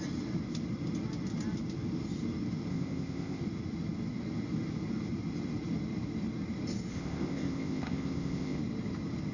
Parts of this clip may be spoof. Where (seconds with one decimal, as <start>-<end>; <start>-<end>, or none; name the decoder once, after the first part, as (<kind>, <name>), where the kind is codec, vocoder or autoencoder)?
2.7-3.4 (codec, ZipCodec); 6.9-8.6